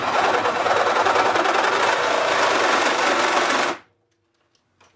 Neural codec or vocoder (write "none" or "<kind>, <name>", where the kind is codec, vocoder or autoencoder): none